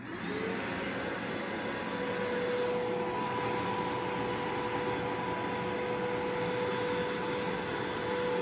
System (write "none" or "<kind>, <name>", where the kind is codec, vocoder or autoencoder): none